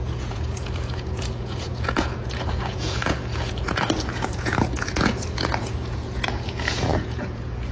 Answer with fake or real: fake